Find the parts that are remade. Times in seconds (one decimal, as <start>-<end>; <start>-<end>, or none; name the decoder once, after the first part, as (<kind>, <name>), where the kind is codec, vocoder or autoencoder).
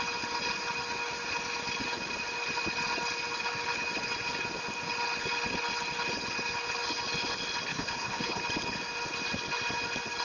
7.7-8.4 (codec, HILCodec)